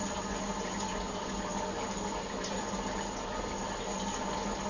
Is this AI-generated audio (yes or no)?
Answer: no